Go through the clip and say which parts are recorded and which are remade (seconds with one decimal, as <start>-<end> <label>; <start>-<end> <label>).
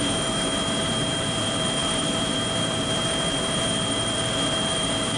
0.0-5.2 remade